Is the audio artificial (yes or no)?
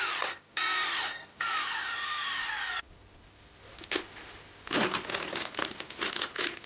no